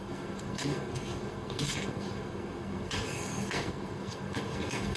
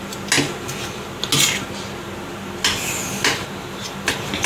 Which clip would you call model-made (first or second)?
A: first